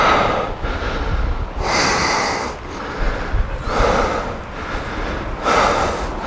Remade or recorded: recorded